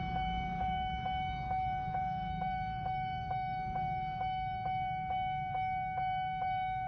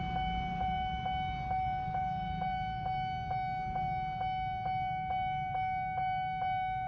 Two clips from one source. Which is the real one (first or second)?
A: second